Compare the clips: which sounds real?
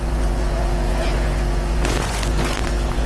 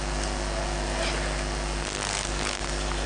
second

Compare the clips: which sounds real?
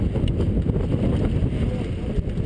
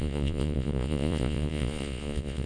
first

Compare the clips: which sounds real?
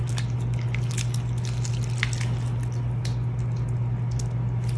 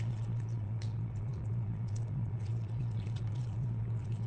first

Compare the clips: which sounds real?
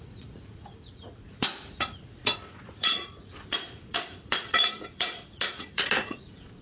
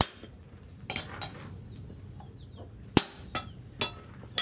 second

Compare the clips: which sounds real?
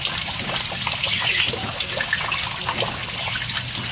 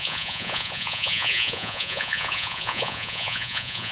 first